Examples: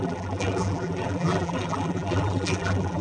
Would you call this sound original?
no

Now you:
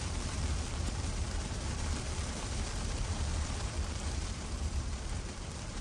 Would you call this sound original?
no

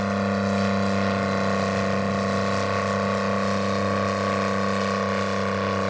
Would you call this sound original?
yes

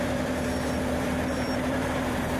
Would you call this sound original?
no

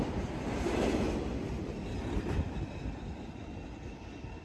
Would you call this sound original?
no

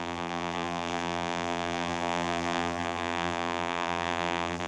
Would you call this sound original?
no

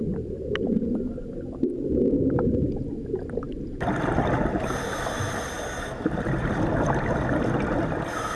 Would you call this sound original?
yes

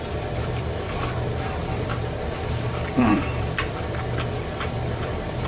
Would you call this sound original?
no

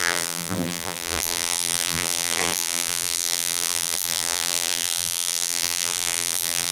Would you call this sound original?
no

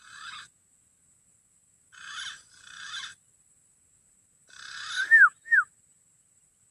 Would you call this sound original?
yes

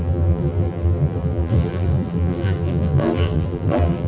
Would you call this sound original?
no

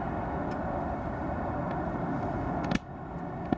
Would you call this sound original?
yes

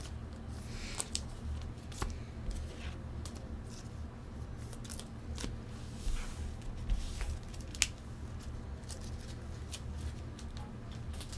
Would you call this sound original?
yes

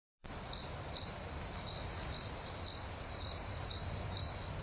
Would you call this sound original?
yes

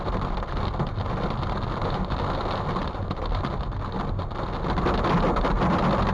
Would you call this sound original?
yes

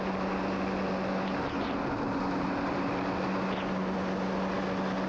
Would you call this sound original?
yes